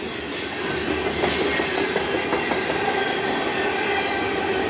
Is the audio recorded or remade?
recorded